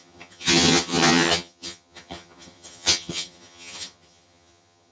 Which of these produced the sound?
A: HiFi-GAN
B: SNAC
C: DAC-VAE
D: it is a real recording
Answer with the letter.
A